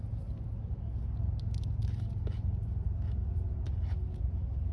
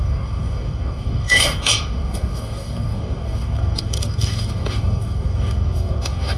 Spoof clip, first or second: second